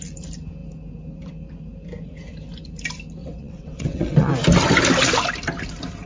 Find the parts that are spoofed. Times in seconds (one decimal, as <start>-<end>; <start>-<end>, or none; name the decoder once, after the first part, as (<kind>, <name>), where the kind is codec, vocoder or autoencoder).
3.2-4.3 (vocoder, WaveNeXt)